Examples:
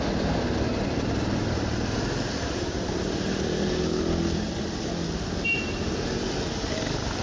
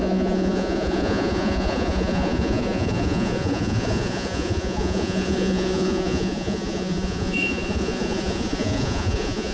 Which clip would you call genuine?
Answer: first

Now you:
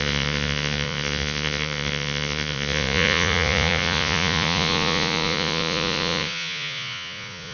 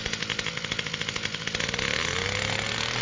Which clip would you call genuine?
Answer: second